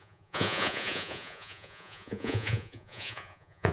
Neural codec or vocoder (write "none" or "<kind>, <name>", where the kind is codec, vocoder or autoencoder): vocoder, Vocos